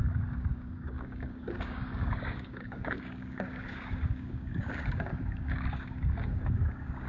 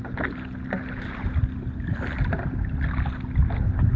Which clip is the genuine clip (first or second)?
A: second